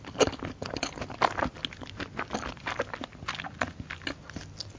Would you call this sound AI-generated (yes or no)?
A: no